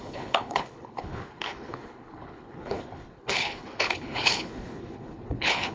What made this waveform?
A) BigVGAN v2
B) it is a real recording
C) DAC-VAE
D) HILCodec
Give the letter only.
D